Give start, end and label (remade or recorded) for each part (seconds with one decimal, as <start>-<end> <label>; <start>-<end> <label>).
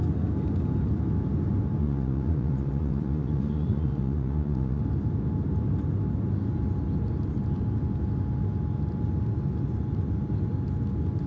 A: 0.0-1.8 recorded; 1.8-4.8 remade; 4.8-11.3 recorded